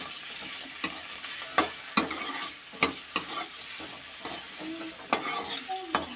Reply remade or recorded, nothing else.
recorded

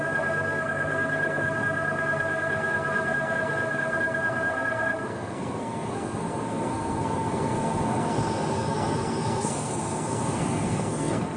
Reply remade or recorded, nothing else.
remade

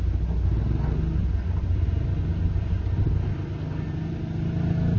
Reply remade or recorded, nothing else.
recorded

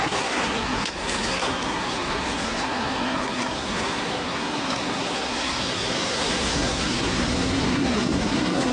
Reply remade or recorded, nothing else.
remade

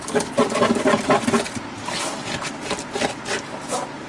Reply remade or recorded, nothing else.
recorded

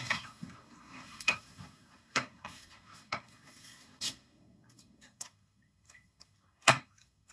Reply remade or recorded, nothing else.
remade